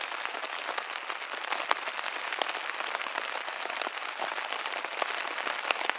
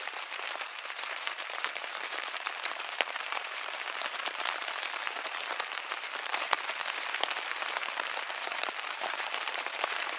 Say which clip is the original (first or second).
first